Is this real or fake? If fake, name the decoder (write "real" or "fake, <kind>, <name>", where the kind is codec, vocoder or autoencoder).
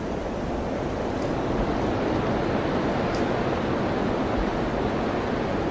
real